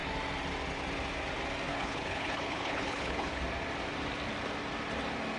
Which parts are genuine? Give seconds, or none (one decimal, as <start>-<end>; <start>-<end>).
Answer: 0.0-1.7; 3.4-5.4